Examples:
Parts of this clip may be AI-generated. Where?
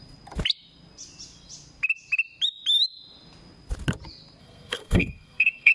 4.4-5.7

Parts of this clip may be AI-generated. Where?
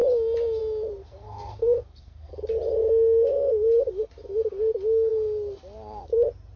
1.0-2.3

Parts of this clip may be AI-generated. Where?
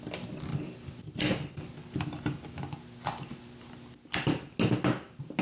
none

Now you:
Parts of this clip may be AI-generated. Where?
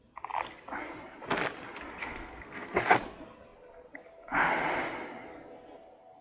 2.0-2.7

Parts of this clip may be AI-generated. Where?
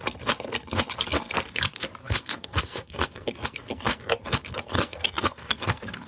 2.0-6.1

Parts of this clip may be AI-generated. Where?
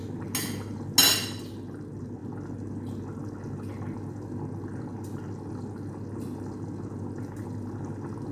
none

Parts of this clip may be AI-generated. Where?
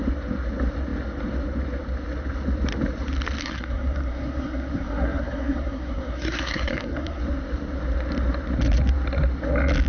3.4-7.2